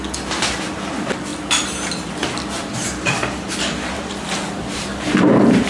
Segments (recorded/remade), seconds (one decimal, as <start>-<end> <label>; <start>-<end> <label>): 0.0-1.3 recorded; 1.3-3.9 remade; 3.9-5.7 recorded